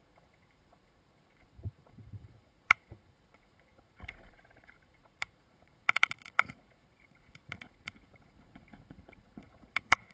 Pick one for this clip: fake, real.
fake